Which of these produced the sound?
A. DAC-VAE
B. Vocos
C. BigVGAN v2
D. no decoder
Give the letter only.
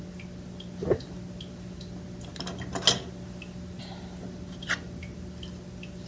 D